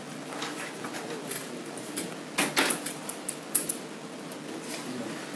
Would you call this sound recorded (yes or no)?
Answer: yes